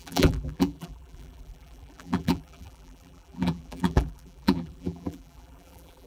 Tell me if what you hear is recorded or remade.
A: remade